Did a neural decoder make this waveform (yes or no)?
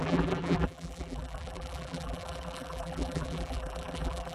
yes